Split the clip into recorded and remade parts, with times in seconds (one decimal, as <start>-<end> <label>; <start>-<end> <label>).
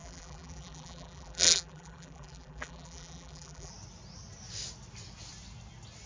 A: 0.0-3.7 remade; 3.7-6.1 recorded